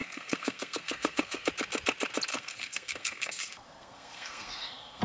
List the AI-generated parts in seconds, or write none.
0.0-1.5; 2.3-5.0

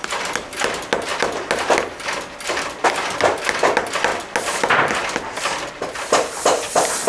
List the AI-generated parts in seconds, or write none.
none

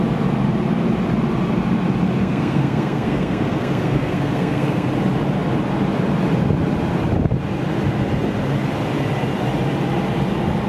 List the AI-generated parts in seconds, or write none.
2.2-4.9

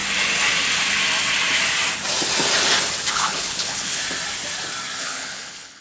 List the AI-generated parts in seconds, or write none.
3.1-4.0; 5.0-5.8

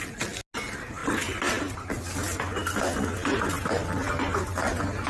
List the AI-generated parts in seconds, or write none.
none